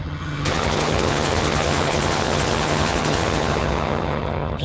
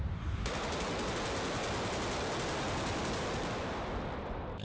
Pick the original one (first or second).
second